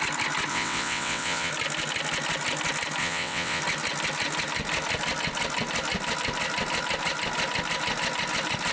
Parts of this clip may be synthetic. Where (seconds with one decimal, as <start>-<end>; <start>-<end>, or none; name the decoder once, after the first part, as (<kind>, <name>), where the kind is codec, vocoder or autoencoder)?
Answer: 0.5-1.5 (vocoder, WaveNeXt); 3.0-3.6